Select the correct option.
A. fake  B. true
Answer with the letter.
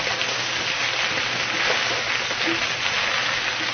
B